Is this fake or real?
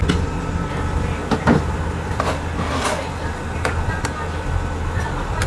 real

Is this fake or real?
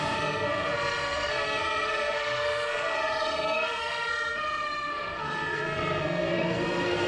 fake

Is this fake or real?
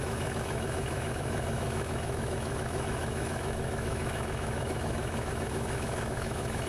fake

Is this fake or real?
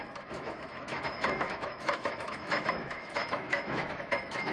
fake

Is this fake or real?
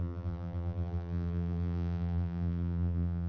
fake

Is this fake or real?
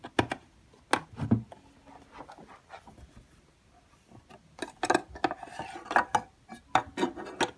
real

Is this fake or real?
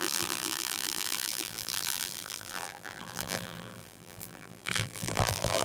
fake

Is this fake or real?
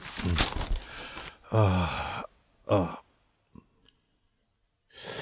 real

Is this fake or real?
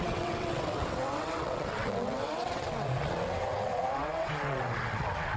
fake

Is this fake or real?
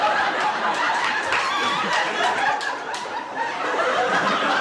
fake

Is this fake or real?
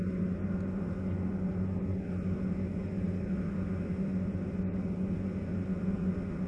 real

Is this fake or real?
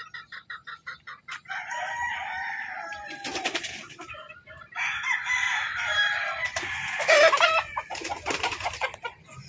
fake